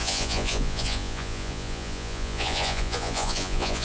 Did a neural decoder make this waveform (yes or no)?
yes